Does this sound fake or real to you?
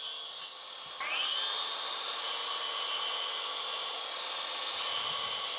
real